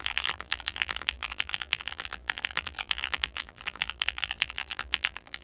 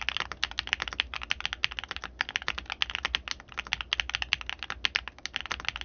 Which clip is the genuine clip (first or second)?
second